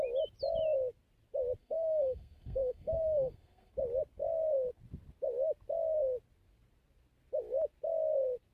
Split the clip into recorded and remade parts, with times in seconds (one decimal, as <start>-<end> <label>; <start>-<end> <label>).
0.0-1.6 recorded; 1.6-3.7 remade; 3.7-8.5 recorded